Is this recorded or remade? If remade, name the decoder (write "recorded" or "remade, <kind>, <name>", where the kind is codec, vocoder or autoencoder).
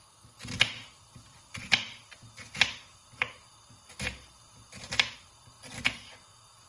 recorded